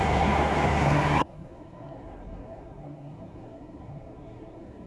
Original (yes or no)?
no